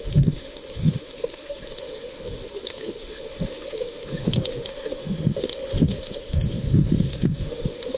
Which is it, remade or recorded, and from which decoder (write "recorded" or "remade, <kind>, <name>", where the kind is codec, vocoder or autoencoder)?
remade, autoencoder, DAC-VAE